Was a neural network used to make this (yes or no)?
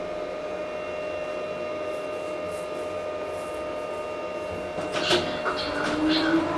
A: no